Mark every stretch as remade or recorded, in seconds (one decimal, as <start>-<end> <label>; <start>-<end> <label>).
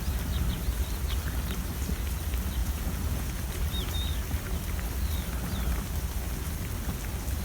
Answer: 0.0-2.6 recorded; 2.6-3.5 remade; 3.5-7.4 recorded